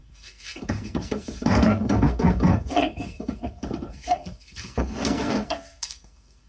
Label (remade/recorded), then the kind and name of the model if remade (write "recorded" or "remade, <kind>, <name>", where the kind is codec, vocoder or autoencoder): remade, codec, SNAC